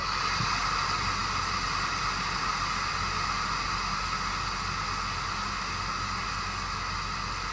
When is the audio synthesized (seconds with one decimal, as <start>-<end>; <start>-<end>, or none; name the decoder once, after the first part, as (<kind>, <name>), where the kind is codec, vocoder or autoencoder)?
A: none